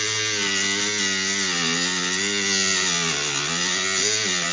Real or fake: real